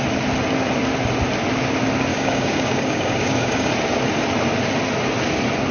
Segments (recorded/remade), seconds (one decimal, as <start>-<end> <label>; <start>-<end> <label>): 0.0-2.1 recorded; 2.1-3.7 remade; 3.7-5.7 recorded